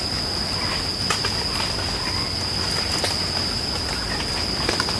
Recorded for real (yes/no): yes